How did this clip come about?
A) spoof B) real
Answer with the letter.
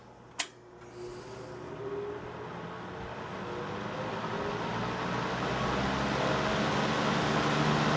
B